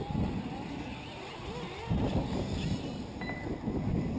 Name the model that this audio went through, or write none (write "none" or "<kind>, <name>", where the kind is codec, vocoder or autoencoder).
none